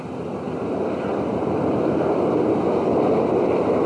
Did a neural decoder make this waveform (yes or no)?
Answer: no